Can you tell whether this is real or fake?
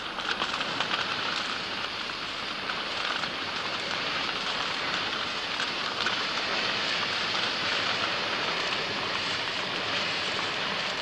fake